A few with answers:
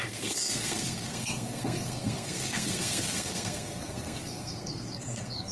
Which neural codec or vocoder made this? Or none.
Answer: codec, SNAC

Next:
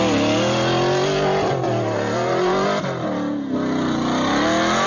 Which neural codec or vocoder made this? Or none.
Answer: none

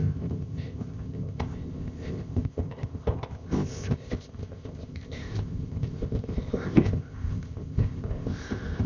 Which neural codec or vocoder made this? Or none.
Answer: codec, ZipCodec